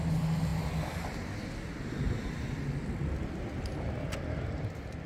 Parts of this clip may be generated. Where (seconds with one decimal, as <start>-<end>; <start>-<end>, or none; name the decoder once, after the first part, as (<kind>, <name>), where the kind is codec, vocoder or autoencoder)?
none